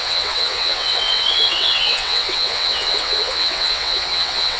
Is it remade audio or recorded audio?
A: remade